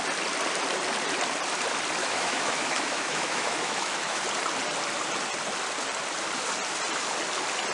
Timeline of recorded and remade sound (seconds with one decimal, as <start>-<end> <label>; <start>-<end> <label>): 0.0-2.0 recorded; 2.0-4.2 remade; 4.2-7.7 recorded